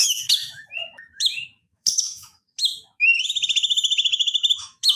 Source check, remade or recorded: remade